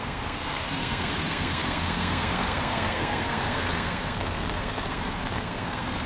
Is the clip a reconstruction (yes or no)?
yes